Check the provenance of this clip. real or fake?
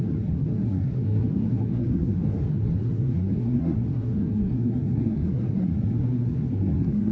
fake